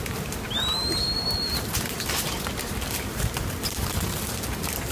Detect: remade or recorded recorded